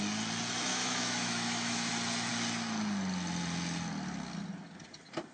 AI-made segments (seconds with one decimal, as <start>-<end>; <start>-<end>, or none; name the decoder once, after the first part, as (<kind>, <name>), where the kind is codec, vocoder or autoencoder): 0.7-1.9 (autoencoder, DAC-VAE)